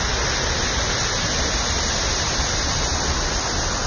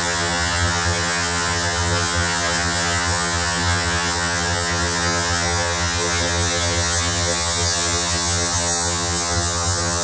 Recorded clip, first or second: first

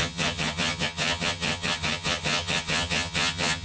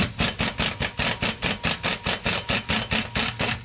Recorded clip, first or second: second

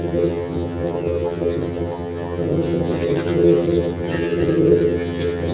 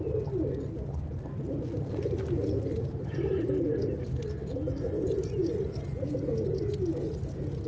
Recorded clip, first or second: second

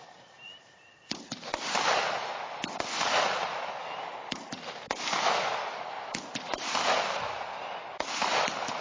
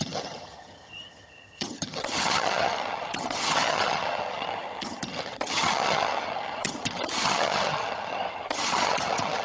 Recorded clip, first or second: first